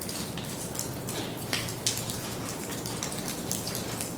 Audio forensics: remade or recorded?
recorded